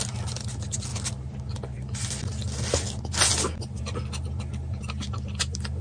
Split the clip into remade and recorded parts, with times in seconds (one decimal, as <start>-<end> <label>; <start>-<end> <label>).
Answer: 0.0-5.8 recorded